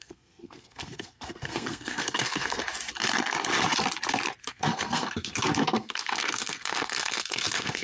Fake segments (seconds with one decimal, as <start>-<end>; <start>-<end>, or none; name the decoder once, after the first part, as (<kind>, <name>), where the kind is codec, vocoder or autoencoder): 0.0-2.6 (codec, SNAC); 4.4-7.8